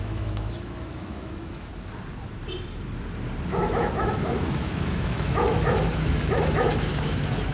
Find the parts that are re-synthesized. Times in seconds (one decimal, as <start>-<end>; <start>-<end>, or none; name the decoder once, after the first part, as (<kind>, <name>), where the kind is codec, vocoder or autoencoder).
0.0-1.7 (autoencoder, DAC-VAE); 3.5-7.5